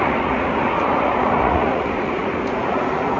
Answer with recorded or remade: remade